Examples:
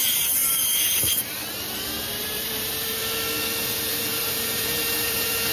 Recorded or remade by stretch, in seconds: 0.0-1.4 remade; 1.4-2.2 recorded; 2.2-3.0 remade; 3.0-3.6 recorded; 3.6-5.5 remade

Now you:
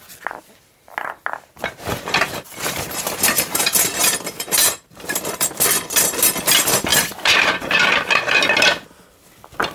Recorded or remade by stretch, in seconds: 0.0-1.5 recorded; 1.5-5.5 remade; 5.5-6.9 recorded; 6.9-7.8 remade; 7.8-9.7 recorded

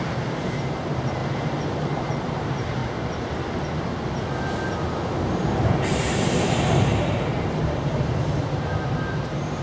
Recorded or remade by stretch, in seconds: 0.0-1.2 remade; 1.2-2.2 recorded; 2.2-2.8 remade; 2.8-5.2 recorded; 5.2-9.6 remade

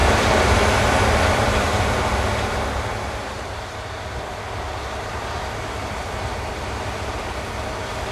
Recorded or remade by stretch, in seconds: 0.0-1.8 remade; 1.8-8.1 recorded

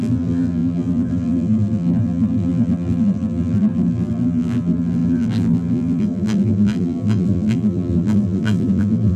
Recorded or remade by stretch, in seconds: 0.0-9.2 remade

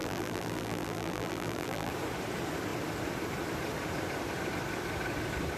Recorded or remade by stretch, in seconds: 0.0-1.9 remade; 1.9-5.6 recorded